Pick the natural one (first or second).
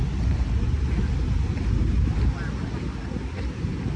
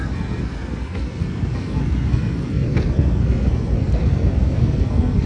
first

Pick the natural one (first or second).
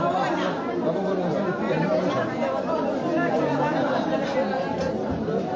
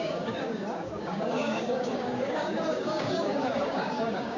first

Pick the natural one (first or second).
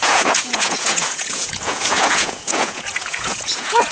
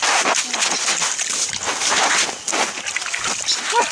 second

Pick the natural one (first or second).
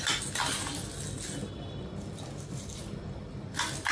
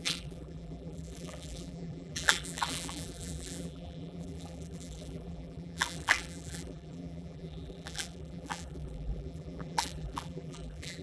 first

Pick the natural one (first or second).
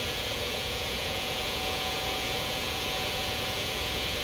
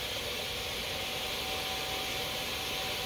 second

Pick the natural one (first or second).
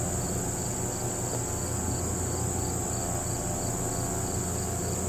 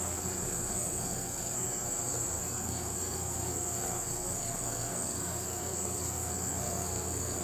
first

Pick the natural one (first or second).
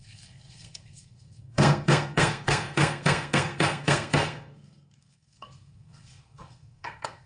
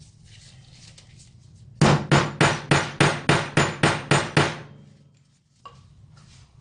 second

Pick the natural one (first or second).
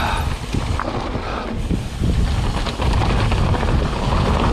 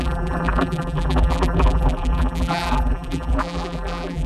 first